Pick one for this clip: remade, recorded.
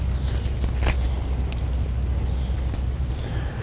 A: recorded